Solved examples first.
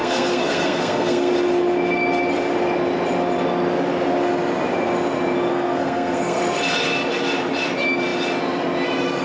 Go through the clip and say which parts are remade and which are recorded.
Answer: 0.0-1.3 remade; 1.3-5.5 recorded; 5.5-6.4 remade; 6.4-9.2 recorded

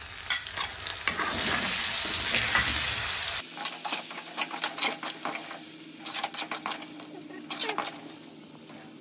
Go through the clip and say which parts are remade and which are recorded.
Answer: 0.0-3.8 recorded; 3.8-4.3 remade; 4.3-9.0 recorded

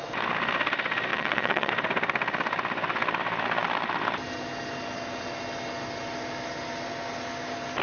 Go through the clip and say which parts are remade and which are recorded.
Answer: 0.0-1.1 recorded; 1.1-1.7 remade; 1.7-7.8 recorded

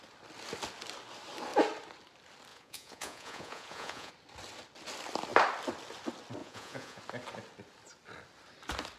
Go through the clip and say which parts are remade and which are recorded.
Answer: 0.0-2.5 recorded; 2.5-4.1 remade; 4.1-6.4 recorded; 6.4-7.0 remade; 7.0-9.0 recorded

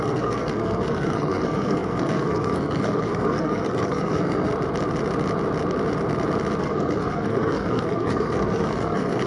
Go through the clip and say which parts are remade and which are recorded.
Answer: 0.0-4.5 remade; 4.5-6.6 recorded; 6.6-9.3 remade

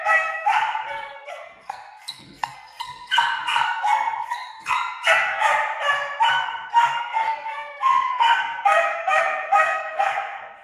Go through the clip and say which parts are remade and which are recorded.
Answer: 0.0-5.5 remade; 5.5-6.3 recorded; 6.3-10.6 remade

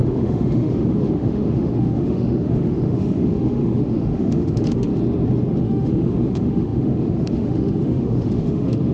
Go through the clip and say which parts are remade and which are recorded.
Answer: 0.0-4.9 remade; 4.9-5.6 recorded; 5.6-8.9 remade